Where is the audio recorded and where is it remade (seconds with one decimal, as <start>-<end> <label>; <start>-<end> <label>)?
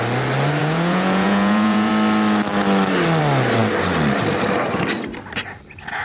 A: 0.0-0.6 recorded; 0.6-1.9 remade; 1.9-6.0 recorded